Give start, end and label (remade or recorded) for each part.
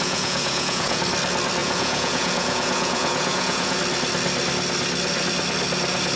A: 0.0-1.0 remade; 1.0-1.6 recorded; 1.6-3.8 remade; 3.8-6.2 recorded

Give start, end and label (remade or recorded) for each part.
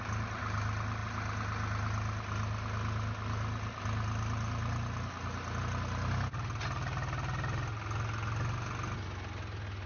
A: 0.0-9.9 recorded